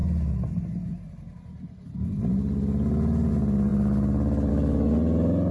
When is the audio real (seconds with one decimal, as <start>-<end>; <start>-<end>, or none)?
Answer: 0.0-5.5